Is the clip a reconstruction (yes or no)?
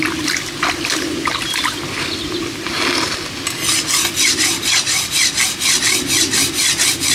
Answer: no